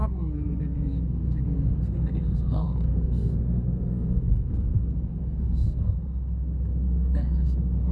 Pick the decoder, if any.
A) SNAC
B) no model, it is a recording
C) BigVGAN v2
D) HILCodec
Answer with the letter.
A